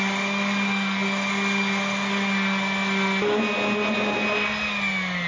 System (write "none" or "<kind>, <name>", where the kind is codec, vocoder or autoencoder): none